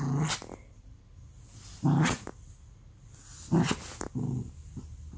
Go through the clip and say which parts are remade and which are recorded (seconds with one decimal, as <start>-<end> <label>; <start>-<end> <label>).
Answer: 0.0-1.5 recorded; 1.5-2.1 remade; 2.1-5.2 recorded